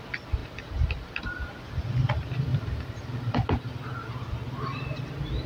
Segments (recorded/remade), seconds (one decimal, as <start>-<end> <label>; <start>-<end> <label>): 0.0-0.4 recorded; 0.4-0.9 remade; 0.9-2.5 recorded; 2.5-3.3 remade; 3.3-4.7 recorded; 4.7-5.5 remade